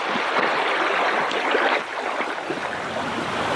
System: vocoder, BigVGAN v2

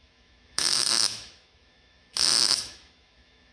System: autoencoder, DAC-VAE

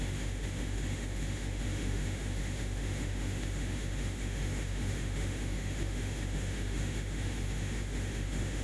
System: autoencoder, DAC-VAE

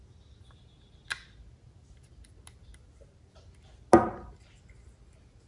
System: none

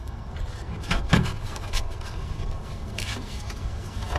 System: codec, SNAC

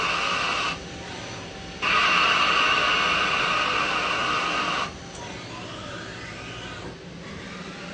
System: none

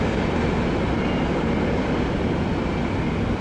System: none